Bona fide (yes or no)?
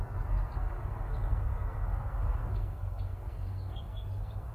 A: no